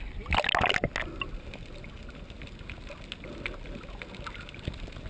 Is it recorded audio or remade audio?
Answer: recorded